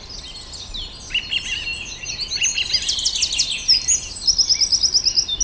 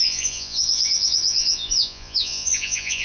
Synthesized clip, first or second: second